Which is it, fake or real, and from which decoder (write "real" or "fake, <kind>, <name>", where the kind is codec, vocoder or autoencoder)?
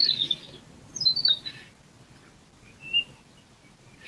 real